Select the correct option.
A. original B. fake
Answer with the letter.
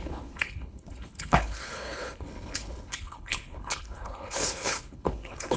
B